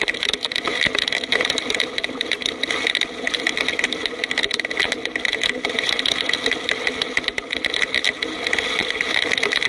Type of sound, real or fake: real